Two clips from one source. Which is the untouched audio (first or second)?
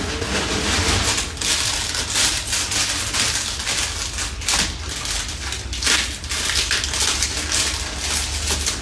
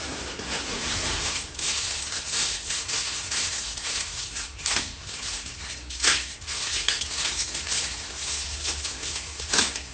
first